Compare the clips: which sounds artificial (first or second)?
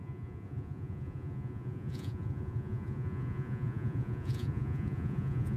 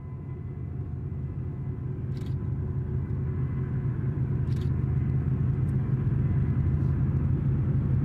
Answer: first